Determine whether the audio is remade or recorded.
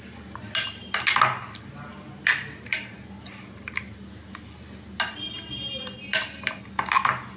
recorded